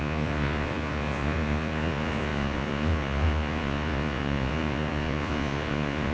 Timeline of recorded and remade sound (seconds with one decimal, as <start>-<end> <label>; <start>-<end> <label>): 0.0-6.1 remade